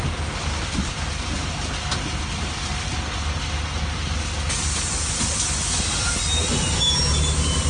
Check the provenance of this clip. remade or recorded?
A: recorded